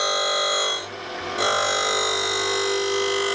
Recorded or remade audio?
recorded